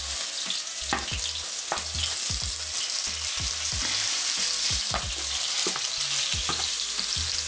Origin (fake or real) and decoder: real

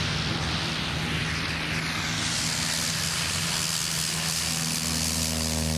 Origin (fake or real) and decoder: real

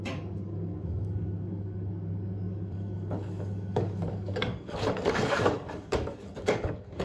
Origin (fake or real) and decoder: fake, codec, DAC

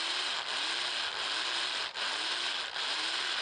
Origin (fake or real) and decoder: real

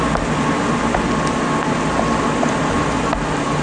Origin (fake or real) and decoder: real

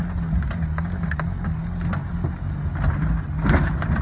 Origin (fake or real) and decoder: real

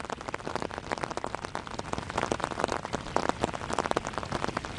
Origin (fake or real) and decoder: real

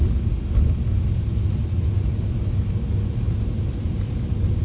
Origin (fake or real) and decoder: real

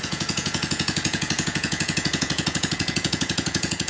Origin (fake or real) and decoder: fake, vocoder, Vocos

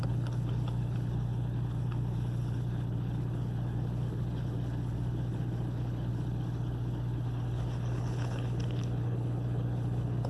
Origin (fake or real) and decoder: fake, codec, HILCodec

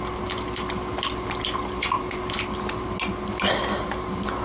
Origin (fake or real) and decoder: real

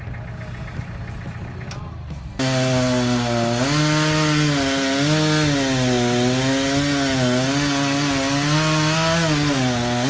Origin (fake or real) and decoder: real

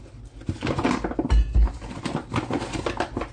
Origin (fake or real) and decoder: real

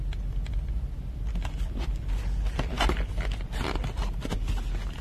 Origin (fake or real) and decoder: real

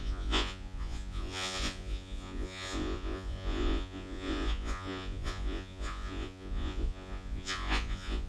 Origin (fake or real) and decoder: fake, vocoder, Vocos